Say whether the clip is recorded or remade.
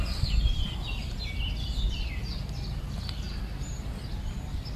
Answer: recorded